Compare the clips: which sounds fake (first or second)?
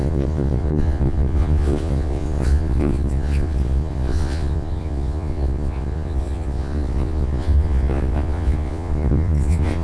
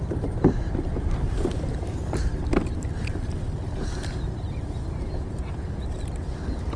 first